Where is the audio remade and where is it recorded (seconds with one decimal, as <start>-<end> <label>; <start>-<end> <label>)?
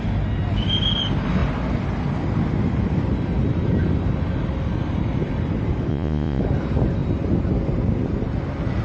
0.0-5.9 recorded; 5.9-6.4 remade; 6.4-8.8 recorded